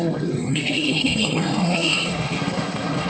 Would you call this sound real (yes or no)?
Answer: no